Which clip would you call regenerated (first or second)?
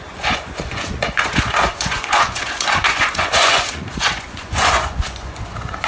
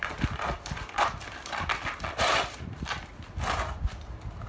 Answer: first